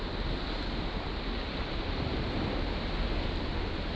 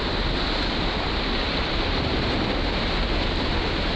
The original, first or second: first